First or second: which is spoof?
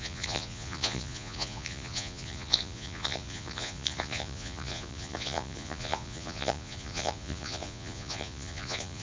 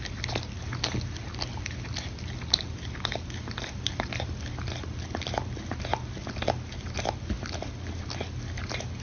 first